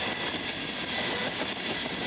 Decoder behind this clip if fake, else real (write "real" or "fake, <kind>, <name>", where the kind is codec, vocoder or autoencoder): fake, vocoder, BigVGAN v2